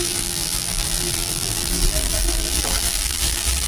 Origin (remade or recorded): remade